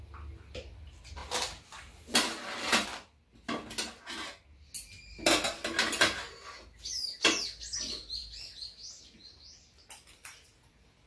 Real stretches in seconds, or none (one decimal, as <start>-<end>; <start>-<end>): 0.0-11.1